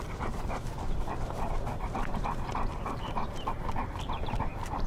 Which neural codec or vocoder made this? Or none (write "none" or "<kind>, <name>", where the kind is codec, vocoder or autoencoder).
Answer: vocoder, BigVGAN v2